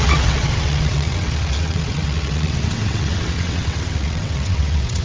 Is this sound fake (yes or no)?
yes